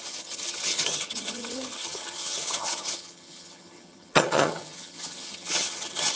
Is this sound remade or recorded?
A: remade